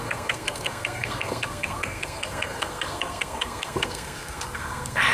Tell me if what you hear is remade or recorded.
remade